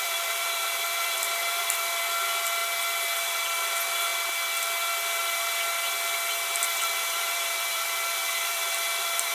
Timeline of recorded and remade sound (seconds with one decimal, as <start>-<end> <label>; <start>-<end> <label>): 0.0-2.6 remade; 2.6-3.1 recorded; 3.1-4.1 remade; 4.1-6.6 recorded; 6.6-9.3 remade